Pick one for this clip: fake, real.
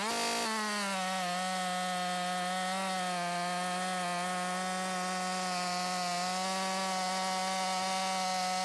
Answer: real